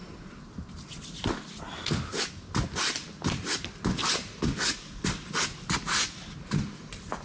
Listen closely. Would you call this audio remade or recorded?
recorded